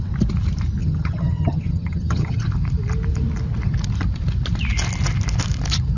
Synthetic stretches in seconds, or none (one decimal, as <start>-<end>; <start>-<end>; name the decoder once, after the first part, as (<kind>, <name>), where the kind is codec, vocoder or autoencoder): 0.8-2.5 (vocoder, HiFi-GAN)